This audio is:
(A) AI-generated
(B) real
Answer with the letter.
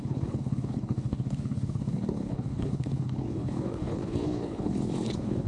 A